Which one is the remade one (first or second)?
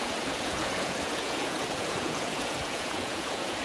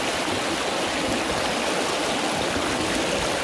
first